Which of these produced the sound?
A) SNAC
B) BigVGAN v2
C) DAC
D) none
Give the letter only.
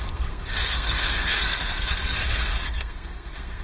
A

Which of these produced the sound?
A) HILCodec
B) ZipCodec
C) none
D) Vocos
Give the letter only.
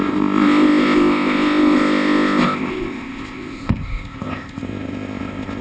B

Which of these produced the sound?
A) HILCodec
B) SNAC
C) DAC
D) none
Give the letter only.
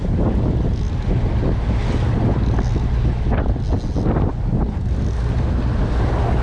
D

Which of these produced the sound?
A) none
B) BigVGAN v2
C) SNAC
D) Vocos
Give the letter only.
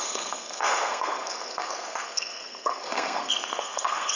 C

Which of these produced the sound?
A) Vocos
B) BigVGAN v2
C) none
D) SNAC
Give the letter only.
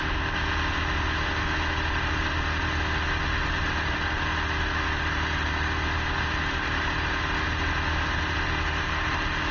C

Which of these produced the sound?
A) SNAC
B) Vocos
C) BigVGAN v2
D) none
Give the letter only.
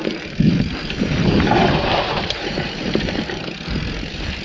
C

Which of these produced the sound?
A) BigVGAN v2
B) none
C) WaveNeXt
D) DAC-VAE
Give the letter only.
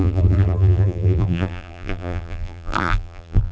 A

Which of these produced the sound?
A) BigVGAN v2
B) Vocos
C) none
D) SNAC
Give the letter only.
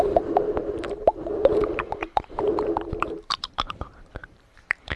A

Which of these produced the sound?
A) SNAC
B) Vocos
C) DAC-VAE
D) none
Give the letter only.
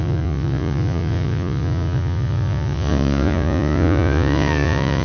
B